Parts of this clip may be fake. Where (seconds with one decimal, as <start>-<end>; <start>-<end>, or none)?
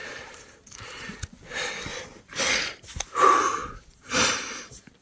0.0-1.0; 1.9-2.4; 3.6-5.0